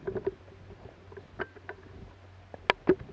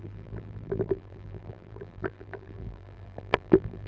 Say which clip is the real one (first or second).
first